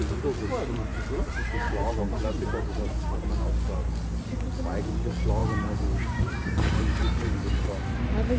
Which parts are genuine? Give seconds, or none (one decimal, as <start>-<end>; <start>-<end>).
0.0-0.9; 3.3-5.4; 7.5-8.4